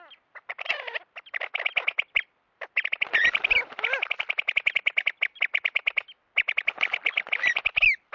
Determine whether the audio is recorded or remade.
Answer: recorded